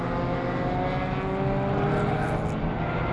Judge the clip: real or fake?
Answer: real